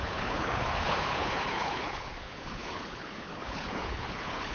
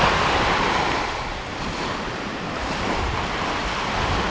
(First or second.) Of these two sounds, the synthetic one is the first